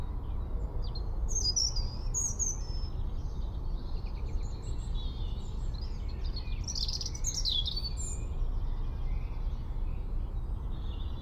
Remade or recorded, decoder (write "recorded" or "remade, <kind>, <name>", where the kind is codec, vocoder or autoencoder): recorded